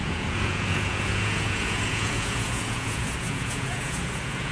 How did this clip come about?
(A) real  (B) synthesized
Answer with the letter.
B